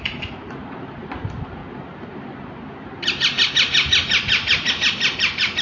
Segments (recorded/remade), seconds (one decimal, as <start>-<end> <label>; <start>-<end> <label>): 0.0-1.6 remade; 1.6-4.7 recorded; 4.7-5.6 remade